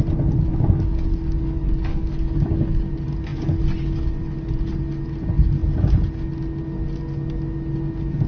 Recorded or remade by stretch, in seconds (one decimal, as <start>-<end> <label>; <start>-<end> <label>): 0.0-0.5 recorded; 0.5-2.9 remade; 2.9-8.3 recorded